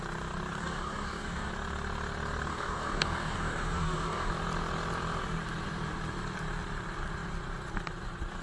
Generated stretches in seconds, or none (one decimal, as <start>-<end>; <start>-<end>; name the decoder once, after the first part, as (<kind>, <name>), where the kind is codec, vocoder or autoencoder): 0.6-1.5 (codec, DAC); 2.5-4.3